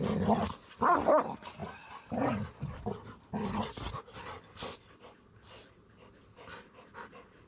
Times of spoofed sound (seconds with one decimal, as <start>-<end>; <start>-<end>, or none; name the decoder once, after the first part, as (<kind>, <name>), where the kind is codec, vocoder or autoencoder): none